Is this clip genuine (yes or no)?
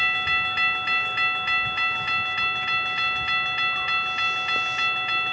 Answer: yes